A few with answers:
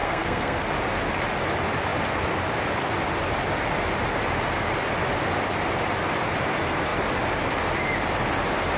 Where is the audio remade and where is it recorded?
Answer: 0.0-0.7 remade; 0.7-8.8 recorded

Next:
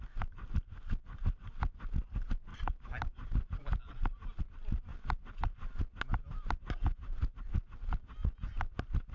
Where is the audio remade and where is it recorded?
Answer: 0.0-2.5 recorded; 2.5-4.4 remade; 4.4-9.1 recorded

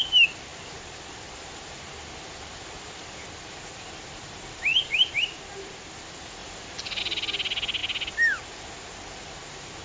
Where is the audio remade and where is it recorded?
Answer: 0.0-4.7 recorded; 4.7-5.9 remade; 5.9-6.4 recorded; 6.4-7.0 remade; 7.0-9.8 recorded

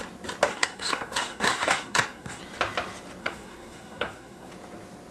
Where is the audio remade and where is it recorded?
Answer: 0.0-0.5 recorded; 0.5-2.4 remade; 2.4-3.2 recorded; 3.2-4.5 remade; 4.5-5.1 recorded

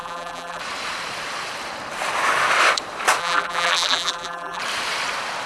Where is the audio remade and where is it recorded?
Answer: 0.0-0.6 remade; 0.6-3.2 recorded; 3.2-4.6 remade; 4.6-5.5 recorded